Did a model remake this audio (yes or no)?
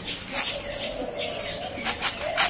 no